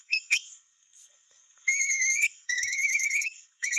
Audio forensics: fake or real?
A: fake